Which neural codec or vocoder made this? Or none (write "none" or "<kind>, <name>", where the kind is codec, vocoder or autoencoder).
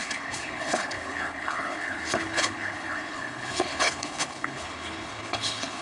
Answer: codec, HILCodec